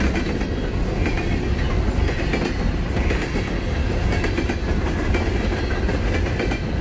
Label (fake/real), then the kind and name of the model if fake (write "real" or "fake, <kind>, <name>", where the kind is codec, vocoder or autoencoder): real